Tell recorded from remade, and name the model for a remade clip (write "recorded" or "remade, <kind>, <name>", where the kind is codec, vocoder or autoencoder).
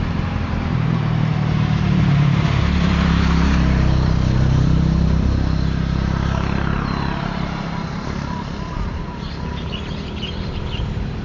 remade, vocoder, BigVGAN v2